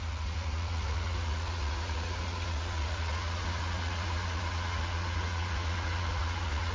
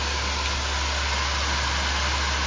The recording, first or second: second